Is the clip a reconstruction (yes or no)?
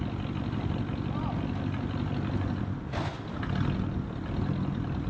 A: no